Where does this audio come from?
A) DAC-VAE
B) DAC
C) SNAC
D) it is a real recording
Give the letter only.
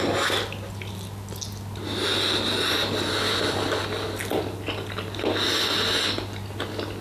D